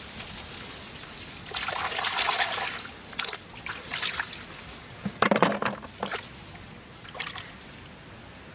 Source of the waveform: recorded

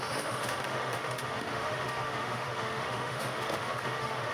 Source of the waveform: remade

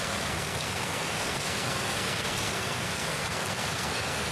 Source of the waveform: remade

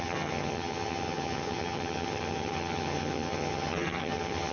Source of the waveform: remade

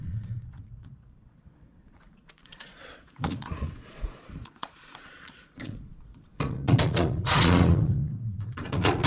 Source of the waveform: remade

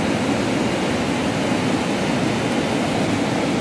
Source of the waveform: recorded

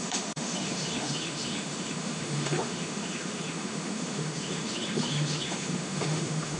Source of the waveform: remade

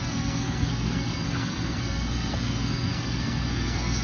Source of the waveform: remade